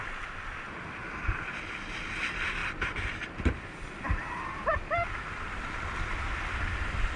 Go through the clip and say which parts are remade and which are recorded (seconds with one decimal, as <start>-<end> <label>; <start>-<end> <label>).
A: 0.0-2.6 recorded; 2.6-5.1 remade; 5.1-7.2 recorded